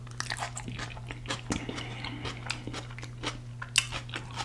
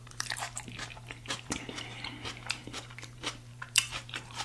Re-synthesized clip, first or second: second